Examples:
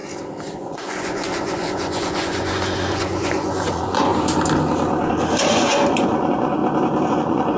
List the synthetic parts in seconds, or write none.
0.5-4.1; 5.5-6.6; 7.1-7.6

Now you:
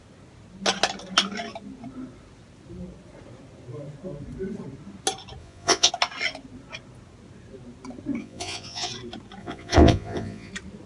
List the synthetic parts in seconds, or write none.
5.4-5.9; 8.2-8.9; 9.4-10.5

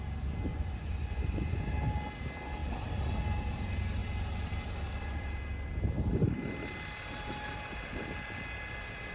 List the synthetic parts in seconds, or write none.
0.5-1.7

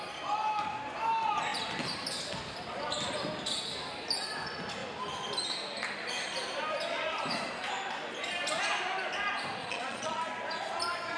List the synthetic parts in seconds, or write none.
9.6-10.2